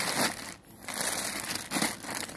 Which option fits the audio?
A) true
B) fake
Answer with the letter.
A